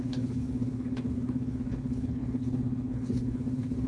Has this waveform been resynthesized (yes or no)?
yes